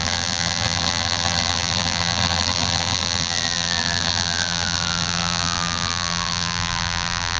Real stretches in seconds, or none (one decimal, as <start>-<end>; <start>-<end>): none